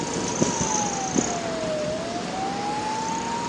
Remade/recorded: recorded